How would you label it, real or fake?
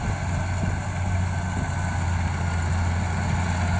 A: real